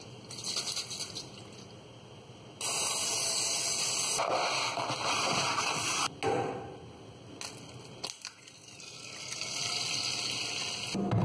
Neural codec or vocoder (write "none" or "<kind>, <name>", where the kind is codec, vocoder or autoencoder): none